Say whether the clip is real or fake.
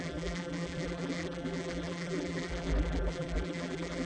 fake